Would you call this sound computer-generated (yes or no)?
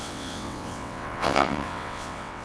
yes